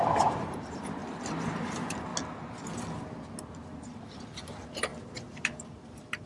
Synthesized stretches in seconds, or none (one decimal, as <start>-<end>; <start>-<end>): 0.0-1.0; 1.6-2.1; 4.2-6.3